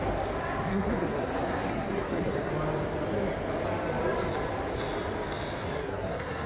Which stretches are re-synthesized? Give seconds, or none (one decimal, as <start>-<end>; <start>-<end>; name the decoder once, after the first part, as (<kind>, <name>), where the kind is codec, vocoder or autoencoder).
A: 0.7-2.5 (codec, SNAC); 5.7-6.5